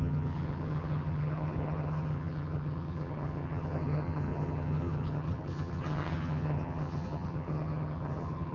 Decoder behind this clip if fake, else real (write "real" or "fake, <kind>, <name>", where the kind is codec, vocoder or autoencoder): fake, vocoder, HiFi-GAN